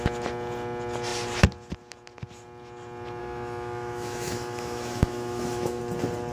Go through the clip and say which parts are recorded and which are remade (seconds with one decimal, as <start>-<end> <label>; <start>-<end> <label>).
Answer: 0.0-3.2 recorded; 3.2-5.8 remade; 5.8-6.3 recorded